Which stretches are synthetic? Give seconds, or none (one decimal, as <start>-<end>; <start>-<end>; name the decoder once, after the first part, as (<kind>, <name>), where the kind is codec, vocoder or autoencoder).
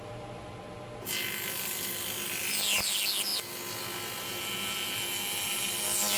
0.0-0.5 (vocoder, BigVGAN v2)